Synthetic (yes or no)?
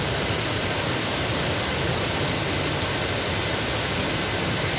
no